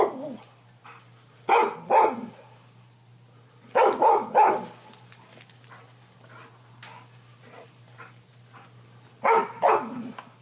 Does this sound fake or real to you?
real